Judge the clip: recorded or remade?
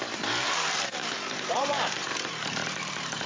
remade